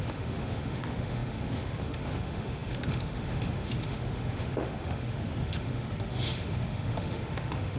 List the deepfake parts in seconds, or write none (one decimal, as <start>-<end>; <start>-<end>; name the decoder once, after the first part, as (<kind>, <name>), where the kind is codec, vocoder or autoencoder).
0.0-7.8 (autoencoder, DAC-VAE)